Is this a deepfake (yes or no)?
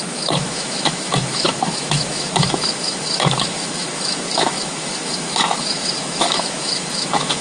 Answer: yes